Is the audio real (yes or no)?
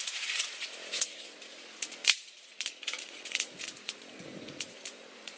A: no